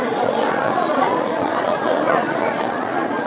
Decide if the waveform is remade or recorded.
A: remade